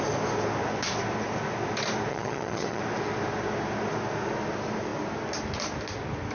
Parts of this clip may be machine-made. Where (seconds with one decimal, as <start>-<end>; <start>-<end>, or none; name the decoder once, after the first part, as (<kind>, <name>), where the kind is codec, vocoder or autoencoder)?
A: 2.1-2.8 (vocoder, HiFi-GAN)